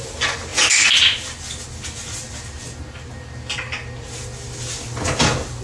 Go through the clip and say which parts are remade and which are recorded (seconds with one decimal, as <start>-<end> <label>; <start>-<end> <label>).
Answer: 0.0-5.6 recorded